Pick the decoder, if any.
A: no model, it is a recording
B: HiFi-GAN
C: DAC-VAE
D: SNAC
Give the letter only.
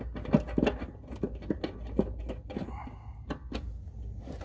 A